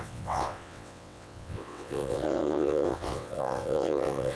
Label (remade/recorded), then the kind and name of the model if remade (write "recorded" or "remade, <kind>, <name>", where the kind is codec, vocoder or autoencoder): remade, vocoder, WaveNeXt